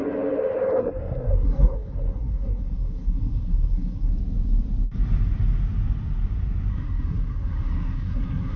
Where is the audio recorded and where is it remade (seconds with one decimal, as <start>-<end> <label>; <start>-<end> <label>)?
0.0-0.8 recorded; 0.8-4.1 remade; 4.1-6.7 recorded; 6.7-8.6 remade